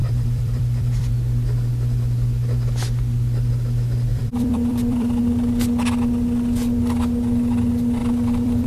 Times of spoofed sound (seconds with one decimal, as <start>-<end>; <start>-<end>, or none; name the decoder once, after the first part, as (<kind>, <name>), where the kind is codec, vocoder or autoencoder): 0.0-1.1 (vocoder, BigVGAN v2); 4.1-5.2; 8.0-8.7